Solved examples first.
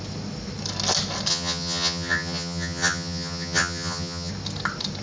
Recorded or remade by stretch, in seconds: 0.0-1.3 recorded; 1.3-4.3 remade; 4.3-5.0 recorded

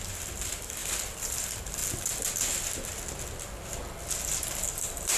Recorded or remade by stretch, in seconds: 0.0-1.8 remade; 1.8-4.7 recorded; 4.7-5.2 remade

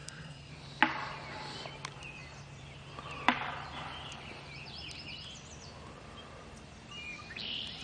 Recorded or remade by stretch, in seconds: 0.0-0.5 remade; 0.5-7.8 recorded

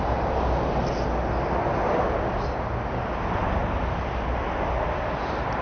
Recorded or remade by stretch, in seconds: 0.0-5.6 recorded

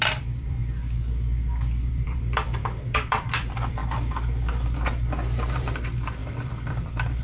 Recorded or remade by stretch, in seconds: 0.0-0.6 remade; 0.6-1.9 recorded; 1.9-3.8 remade; 3.8-5.6 recorded; 5.6-7.2 remade

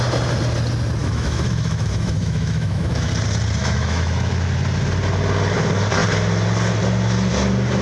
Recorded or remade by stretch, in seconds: 0.0-1.0 recorded; 1.0-3.1 remade; 3.1-3.6 recorded; 3.6-4.3 remade; 4.3-7.8 recorded

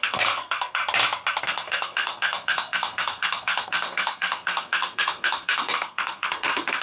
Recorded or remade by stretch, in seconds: 0.0-0.8 remade; 0.8-1.4 recorded; 1.4-6.8 remade

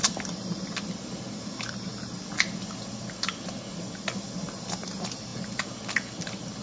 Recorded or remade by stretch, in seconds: 0.0-6.6 recorded